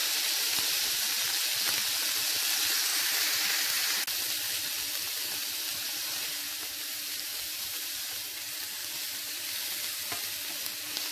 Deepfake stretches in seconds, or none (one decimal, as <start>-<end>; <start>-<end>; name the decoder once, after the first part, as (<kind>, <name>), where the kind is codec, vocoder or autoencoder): 0.0-1.2 (vocoder, BigVGAN v2); 2.9-4.0; 5.7-8.3; 8.8-9.5